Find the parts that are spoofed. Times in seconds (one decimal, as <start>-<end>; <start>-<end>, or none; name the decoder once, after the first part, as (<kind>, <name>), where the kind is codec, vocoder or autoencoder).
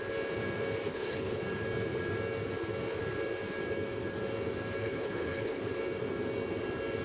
0.9-1.4 (codec, HILCodec); 4.8-5.7